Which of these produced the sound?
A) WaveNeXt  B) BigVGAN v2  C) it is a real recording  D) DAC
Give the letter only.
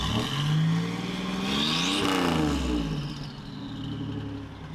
C